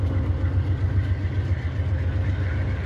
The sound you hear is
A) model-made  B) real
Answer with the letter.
B